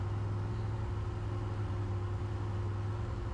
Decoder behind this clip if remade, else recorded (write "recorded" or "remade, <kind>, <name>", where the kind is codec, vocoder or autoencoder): recorded